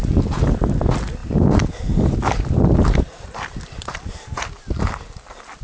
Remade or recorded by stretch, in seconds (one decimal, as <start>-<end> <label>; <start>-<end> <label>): 0.0-5.6 recorded